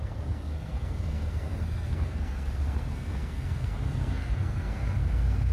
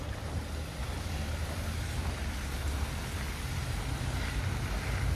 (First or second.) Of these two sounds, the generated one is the first